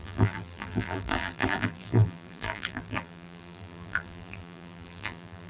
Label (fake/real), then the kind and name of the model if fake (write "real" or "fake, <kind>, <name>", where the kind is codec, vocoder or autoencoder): fake, vocoder, BigVGAN v2